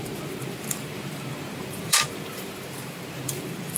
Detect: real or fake fake